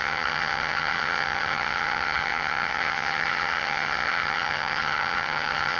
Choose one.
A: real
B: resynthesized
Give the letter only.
B